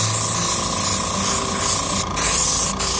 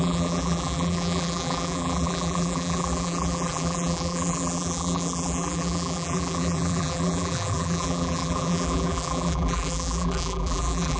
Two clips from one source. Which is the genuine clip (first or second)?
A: first